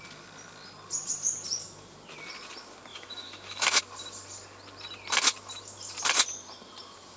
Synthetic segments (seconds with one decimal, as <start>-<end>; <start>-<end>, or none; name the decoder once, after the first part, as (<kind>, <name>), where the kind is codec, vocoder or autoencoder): 2.9-3.8 (autoencoder, DAC-VAE)